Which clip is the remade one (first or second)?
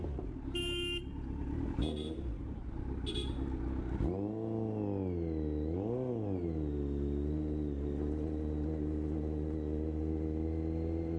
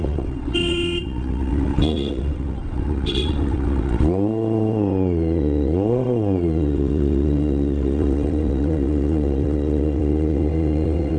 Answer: second